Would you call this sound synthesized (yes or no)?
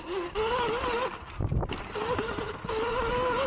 no